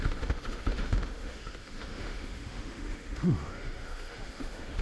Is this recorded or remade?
remade